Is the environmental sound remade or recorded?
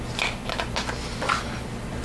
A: recorded